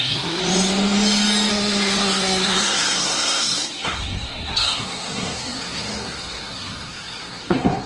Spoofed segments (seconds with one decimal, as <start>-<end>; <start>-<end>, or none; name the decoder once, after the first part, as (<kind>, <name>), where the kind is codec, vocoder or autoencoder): 0.0-0.4 (codec, SNAC); 1.5-7.9